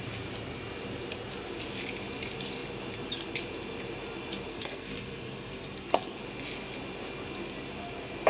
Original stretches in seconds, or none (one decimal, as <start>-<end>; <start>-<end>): 0.0-4.5; 6.2-8.3